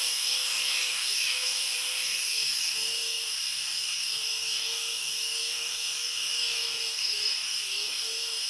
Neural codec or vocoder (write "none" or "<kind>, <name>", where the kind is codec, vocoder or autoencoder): codec, DAC